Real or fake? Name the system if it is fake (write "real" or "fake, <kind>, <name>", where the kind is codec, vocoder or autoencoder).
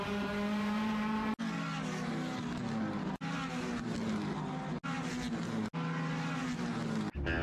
real